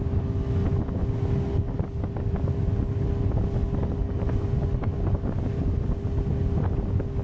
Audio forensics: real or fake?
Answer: real